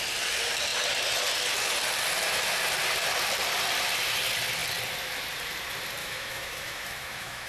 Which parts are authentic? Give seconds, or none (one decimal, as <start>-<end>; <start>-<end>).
0.0-6.0